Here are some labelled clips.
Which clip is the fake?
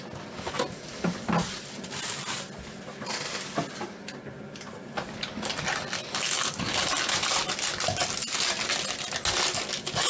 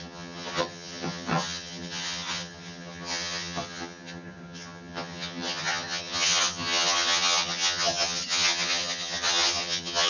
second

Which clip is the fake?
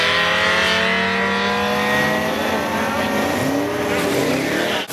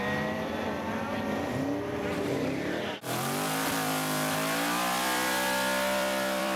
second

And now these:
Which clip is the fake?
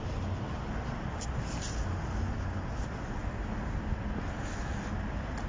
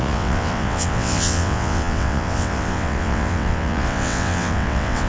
second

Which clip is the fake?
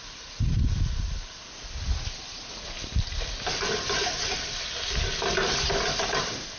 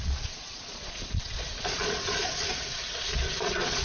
second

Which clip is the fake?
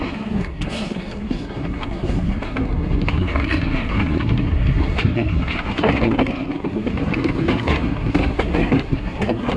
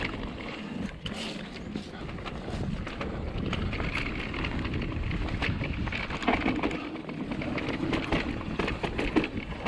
first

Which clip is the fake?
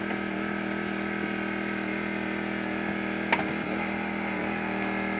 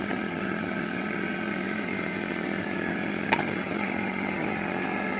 second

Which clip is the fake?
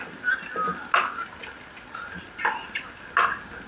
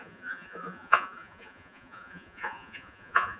second